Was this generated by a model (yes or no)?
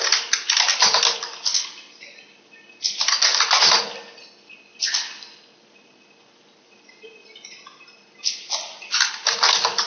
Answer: no